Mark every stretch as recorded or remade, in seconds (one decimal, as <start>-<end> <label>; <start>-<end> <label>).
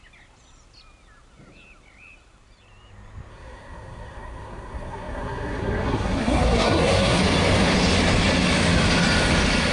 0.0-3.3 recorded; 3.3-7.2 remade; 7.2-9.7 recorded